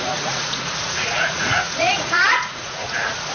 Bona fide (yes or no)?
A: no